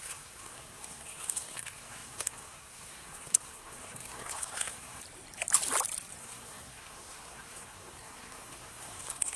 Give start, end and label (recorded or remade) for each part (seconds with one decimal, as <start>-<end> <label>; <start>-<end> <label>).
0.0-5.0 remade; 5.0-6.2 recorded; 6.2-9.4 remade